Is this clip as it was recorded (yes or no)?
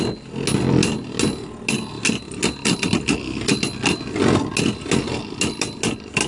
yes